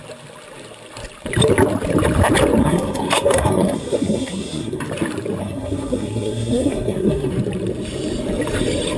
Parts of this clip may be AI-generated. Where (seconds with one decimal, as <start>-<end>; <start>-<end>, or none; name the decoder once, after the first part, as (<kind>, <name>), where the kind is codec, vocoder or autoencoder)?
2.6-4.8 (codec, SNAC); 5.4-7.3